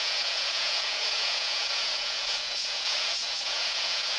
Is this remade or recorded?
remade